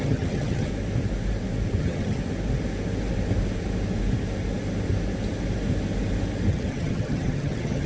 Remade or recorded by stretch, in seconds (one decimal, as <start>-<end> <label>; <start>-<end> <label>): 0.0-0.7 remade; 0.7-1.8 recorded; 1.8-2.2 remade; 2.2-6.5 recorded; 6.5-7.9 remade